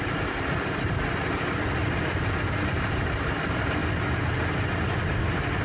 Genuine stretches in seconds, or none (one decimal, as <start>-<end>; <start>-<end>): 0.0-5.6